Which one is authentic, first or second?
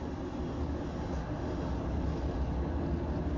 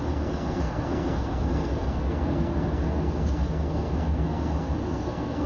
first